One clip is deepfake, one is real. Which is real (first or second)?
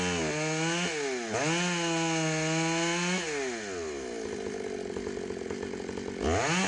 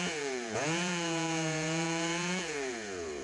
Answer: first